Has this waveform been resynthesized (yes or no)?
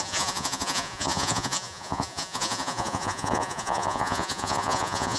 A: yes